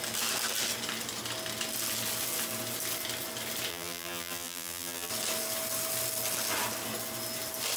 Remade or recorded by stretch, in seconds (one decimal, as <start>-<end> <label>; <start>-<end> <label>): 0.0-3.7 recorded; 3.7-5.1 remade; 5.1-7.8 recorded